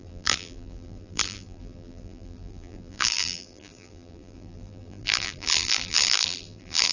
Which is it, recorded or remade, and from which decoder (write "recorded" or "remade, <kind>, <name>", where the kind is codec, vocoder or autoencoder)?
remade, vocoder, BigVGAN v2